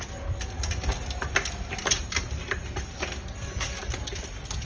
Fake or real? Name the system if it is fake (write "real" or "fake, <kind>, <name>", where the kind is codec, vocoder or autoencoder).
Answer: real